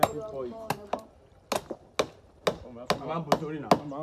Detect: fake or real real